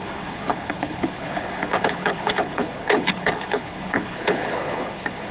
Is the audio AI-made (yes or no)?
yes